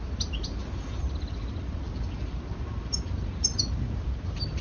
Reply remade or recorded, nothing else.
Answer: recorded